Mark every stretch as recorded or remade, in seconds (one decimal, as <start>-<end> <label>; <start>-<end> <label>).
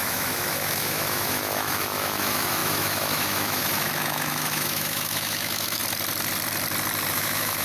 0.0-5.8 remade; 5.8-7.1 recorded; 7.1-7.6 remade